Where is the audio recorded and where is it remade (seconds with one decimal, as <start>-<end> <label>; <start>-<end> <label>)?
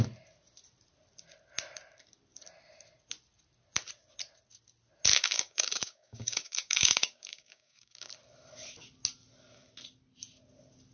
0.0-5.1 recorded; 5.1-8.1 remade; 8.1-10.9 recorded